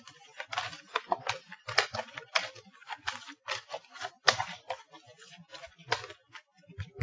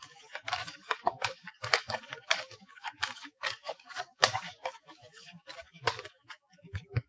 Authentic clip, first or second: first